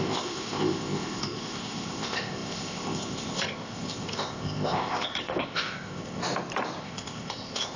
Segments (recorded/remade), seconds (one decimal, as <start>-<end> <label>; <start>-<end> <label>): 0.0-6.2 remade; 6.2-6.8 recorded; 6.8-7.8 remade